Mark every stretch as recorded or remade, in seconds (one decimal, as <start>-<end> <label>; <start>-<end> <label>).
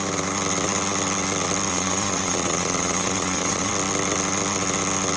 0.0-1.7 recorded; 1.7-3.7 remade; 3.7-5.2 recorded